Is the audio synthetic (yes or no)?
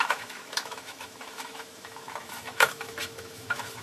yes